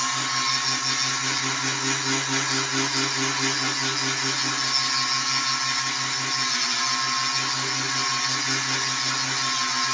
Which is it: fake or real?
real